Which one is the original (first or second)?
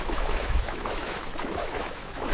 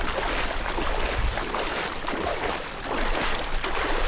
second